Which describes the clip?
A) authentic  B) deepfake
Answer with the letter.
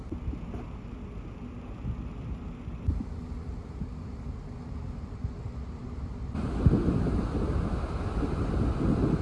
A